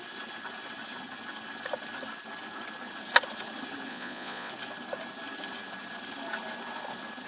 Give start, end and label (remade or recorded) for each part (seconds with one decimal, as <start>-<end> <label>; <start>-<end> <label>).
0.0-3.9 recorded; 3.9-4.5 remade; 4.5-7.3 recorded